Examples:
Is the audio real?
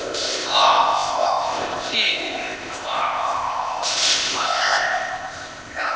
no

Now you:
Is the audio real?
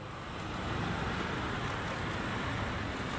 yes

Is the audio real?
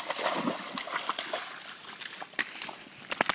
yes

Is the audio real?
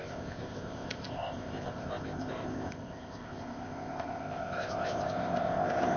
no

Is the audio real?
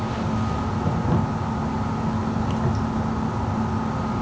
yes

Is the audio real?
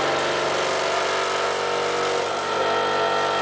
yes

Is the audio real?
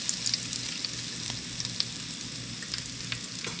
yes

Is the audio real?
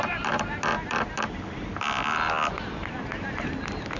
yes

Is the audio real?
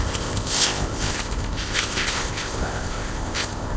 no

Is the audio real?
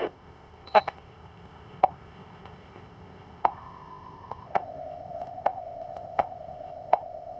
no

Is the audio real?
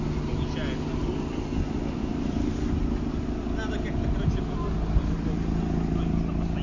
yes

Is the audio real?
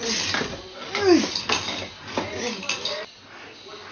yes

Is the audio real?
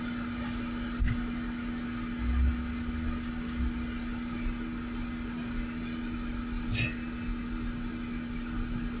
yes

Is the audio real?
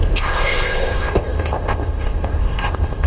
no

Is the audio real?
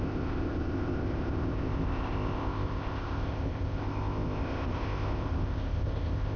no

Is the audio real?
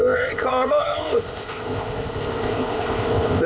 no